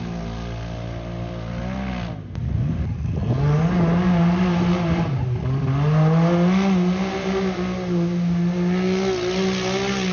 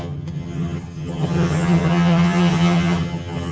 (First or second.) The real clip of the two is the first